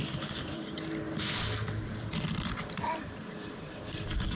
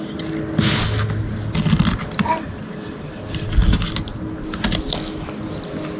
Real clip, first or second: second